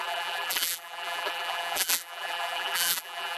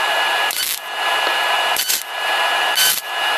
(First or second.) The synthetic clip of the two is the first